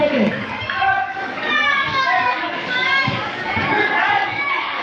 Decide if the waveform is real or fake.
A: fake